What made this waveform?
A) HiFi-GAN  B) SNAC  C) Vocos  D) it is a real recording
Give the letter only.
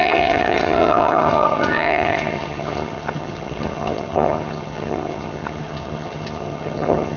A